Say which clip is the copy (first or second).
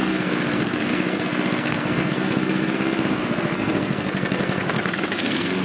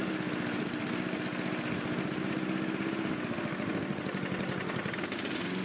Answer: first